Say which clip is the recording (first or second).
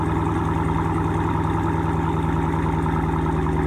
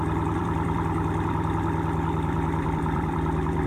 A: first